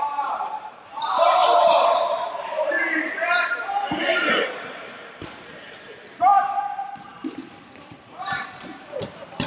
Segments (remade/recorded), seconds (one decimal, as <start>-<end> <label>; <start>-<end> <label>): 0.0-9.5 remade